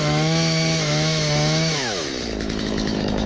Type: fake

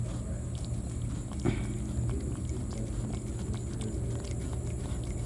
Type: real